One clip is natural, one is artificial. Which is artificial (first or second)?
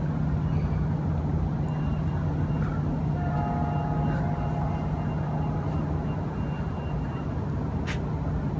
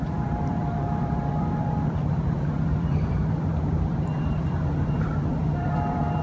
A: second